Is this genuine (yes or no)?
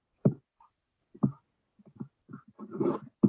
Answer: yes